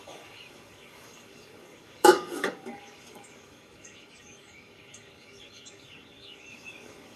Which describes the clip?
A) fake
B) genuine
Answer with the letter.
A